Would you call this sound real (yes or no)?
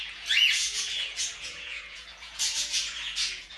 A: no